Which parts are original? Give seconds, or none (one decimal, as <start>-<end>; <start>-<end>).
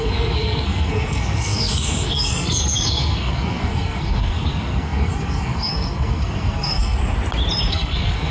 7.0-7.7